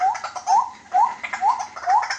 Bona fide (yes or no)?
no